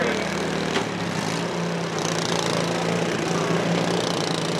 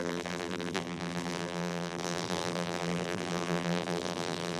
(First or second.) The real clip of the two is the first